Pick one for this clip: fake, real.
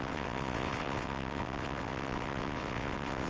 fake